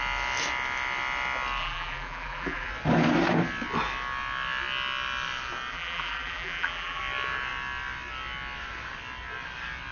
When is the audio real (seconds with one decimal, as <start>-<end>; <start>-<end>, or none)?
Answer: 0.0-1.6; 2.7-5.7; 7.0-9.9